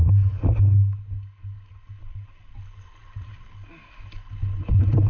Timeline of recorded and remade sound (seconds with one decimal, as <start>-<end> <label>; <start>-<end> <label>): 0.0-5.1 recorded